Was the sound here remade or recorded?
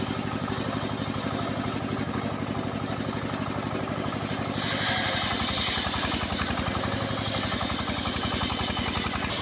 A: recorded